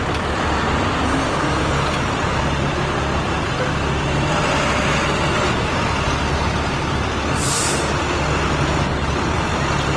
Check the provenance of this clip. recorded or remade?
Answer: recorded